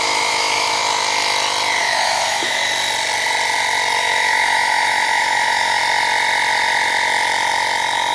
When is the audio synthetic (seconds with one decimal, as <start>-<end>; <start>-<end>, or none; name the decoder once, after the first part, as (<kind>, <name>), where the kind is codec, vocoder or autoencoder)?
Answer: 0.0-0.8 (autoencoder, DAC-VAE); 1.8-2.6; 4.0-5.8